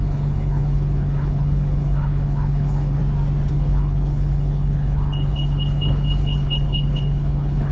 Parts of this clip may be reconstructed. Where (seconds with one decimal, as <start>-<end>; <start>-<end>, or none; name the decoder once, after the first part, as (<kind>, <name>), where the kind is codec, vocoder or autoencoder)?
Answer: 0.0-3.0 (codec, HILCodec); 3.5-7.7